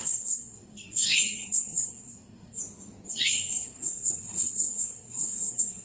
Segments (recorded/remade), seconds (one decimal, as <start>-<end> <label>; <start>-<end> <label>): 0.0-2.6 remade; 2.6-3.1 recorded; 3.1-5.8 remade